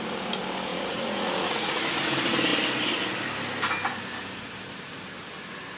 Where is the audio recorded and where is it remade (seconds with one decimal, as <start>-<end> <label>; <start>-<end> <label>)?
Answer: 0.0-0.7 recorded; 0.7-1.8 remade; 1.8-5.8 recorded